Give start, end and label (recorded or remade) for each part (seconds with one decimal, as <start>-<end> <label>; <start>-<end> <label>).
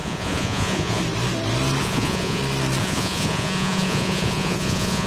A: 0.0-1.0 remade; 1.0-1.8 recorded; 1.8-2.4 remade; 2.4-2.8 recorded; 2.8-5.1 remade